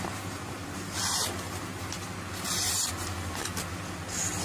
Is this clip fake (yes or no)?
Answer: no